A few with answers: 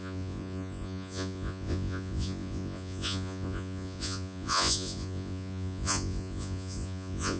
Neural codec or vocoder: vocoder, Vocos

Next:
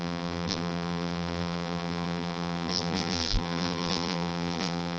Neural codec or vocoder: vocoder, BigVGAN v2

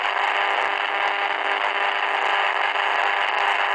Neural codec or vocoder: none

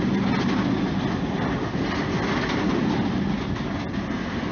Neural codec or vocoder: none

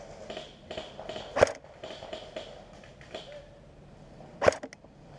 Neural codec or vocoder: none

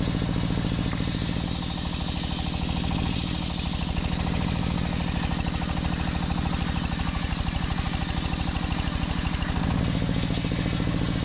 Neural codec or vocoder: none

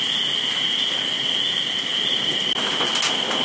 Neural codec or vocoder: none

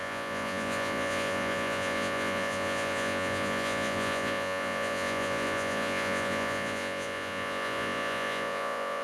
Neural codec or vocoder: vocoder, Vocos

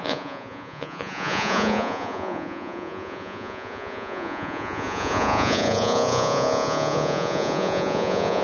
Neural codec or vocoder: vocoder, Vocos